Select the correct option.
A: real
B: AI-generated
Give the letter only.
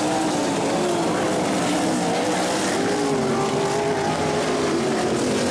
A